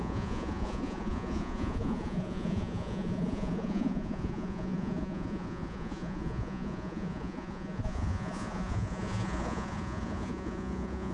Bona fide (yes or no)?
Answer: no